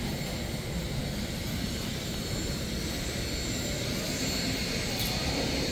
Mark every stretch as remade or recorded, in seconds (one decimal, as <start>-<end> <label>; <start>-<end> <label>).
0.0-5.7 recorded